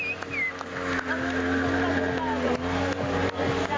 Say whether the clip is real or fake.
real